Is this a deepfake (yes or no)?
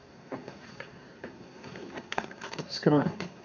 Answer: yes